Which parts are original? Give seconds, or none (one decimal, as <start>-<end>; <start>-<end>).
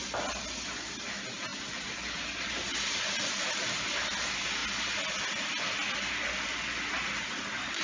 0.0-7.8